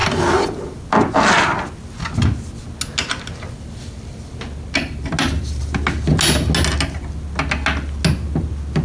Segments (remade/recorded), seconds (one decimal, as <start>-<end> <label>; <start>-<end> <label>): 0.0-8.8 recorded